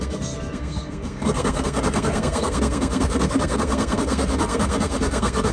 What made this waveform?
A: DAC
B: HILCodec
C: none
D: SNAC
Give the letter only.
D